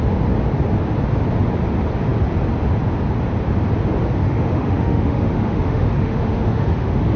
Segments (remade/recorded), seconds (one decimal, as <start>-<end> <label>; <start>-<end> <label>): 0.0-4.2 recorded; 4.2-7.2 remade